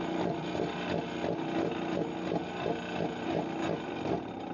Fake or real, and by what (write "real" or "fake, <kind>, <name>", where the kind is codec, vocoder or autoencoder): real